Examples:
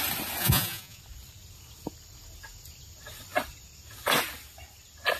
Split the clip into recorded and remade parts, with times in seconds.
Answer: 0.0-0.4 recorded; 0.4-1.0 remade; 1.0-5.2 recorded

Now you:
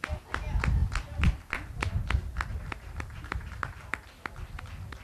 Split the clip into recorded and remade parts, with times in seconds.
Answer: 0.0-2.5 recorded; 2.5-3.8 remade; 3.8-5.0 recorded

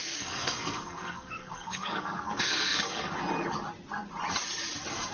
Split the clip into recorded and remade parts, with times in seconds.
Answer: 0.0-3.1 remade; 3.1-5.1 recorded

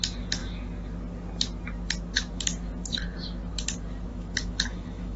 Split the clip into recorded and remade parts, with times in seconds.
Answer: 0.0-4.1 recorded; 4.1-5.2 remade

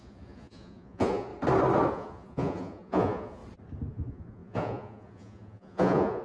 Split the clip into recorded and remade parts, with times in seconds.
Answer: 0.0-1.3 remade; 1.3-1.9 recorded; 1.9-3.4 remade; 3.4-3.9 recorded; 3.9-6.2 remade

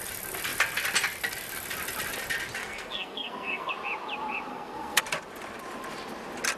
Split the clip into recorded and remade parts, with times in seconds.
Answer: 0.0-2.6 recorded; 2.6-3.7 remade; 3.7-4.5 recorded; 4.5-5.0 remade; 5.0-6.6 recorded